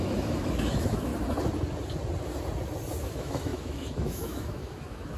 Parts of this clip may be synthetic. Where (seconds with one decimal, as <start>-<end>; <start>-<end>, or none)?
0.0-1.1; 3.0-5.2